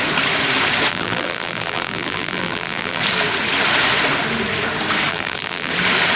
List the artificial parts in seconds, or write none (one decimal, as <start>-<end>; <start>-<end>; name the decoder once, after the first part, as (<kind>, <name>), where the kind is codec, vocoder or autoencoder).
0.9-3.0 (vocoder, BigVGAN v2); 5.1-5.7